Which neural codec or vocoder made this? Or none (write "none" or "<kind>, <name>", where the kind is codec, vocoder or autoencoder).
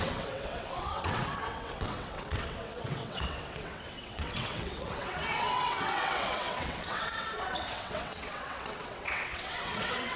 vocoder, WaveNeXt